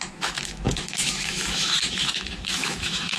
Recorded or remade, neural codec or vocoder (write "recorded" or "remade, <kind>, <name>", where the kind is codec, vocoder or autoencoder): remade, autoencoder, DAC-VAE